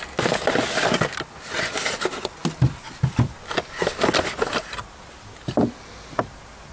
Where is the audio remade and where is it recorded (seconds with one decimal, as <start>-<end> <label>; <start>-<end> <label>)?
0.0-6.7 recorded